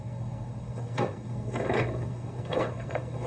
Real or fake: fake